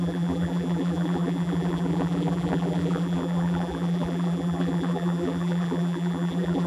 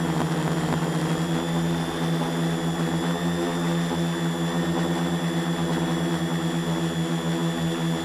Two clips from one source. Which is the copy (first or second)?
first